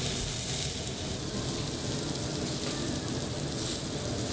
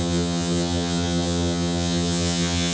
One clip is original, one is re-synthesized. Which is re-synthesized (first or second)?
second